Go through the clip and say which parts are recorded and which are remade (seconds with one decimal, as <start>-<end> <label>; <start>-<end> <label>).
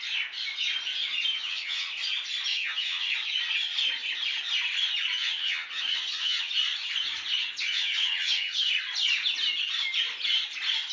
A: 0.0-1.3 recorded; 1.3-1.9 remade; 1.9-2.5 recorded; 2.5-3.1 remade; 3.1-5.2 recorded; 5.2-6.5 remade; 6.5-7.4 recorded; 7.4-8.7 remade; 8.7-10.9 recorded